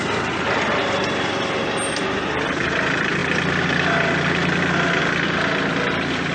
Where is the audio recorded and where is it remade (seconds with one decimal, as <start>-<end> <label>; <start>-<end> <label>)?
0.0-6.3 recorded